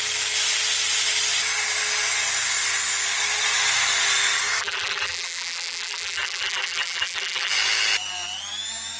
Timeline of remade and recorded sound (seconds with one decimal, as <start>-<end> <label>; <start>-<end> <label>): 0.0-4.6 recorded; 4.6-7.5 remade; 7.5-9.0 recorded